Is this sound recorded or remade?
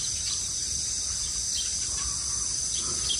recorded